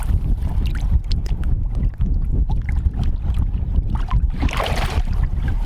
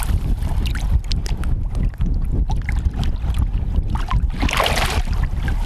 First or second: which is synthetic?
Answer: first